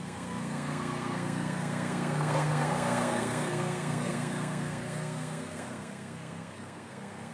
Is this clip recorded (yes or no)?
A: no